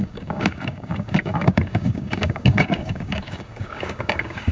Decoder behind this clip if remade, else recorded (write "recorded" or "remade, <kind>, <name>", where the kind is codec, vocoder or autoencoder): remade, codec, DAC